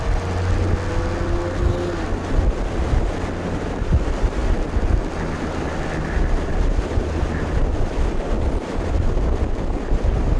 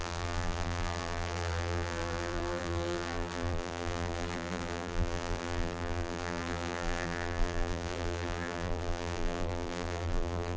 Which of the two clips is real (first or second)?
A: first